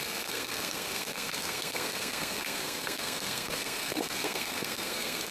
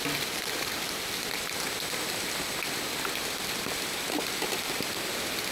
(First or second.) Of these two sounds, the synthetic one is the first